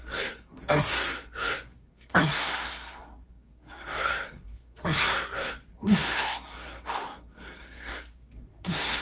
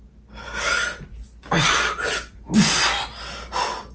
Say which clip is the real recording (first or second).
second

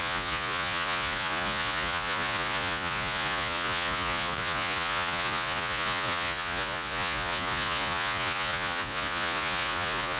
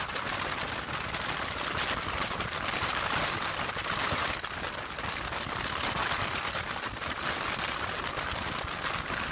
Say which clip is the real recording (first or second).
second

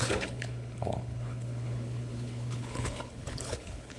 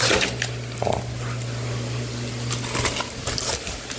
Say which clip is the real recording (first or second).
second